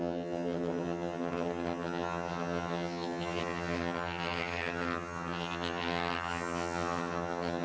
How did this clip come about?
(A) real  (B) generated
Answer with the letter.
B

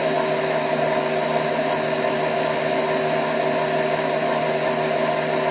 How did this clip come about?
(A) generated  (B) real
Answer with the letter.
B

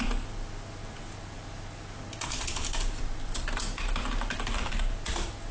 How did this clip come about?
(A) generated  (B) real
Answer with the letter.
B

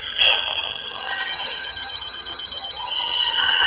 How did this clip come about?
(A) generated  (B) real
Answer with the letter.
A